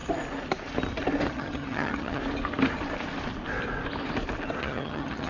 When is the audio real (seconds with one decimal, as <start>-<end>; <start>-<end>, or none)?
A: 0.0-1.3; 2.2-4.6